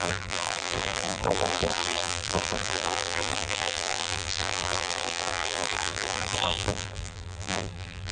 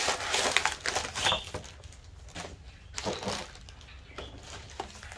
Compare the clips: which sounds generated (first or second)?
first